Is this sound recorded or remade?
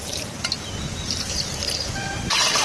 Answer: remade